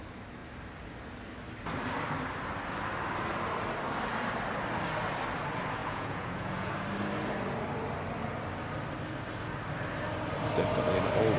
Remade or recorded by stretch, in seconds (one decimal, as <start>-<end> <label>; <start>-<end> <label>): 0.0-5.8 recorded; 5.8-6.7 remade; 6.7-11.4 recorded